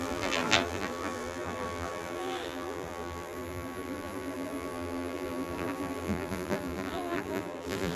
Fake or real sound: fake